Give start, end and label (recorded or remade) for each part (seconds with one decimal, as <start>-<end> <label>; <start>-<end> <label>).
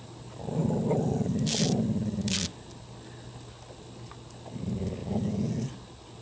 0.0-5.0 recorded; 5.0-5.5 remade; 5.5-6.2 recorded